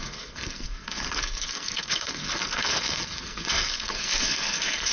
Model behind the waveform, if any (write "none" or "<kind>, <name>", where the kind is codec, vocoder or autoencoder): codec, SNAC